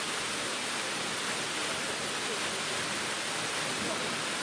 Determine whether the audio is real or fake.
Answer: real